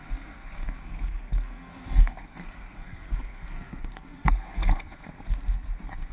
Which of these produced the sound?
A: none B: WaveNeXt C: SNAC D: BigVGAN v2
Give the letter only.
C